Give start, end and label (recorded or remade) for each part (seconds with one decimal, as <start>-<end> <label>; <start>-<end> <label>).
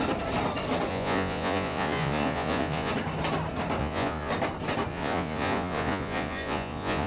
0.0-0.9 recorded; 0.9-2.9 remade; 2.9-3.8 recorded; 3.8-4.3 remade; 4.3-4.9 recorded; 4.9-7.1 remade